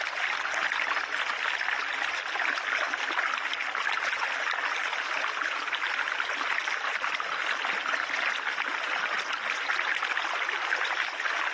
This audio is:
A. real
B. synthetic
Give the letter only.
A